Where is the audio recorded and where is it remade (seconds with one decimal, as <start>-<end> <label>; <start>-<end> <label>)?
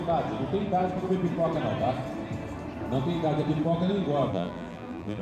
0.0-4.3 recorded; 4.3-5.2 remade